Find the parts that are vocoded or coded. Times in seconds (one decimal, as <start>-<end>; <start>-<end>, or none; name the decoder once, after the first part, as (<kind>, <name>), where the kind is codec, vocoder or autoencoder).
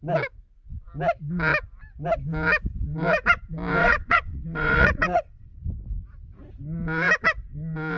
3.8-5.6 (vocoder, WaveNeXt)